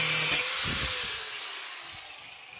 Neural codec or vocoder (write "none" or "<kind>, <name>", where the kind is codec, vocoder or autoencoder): none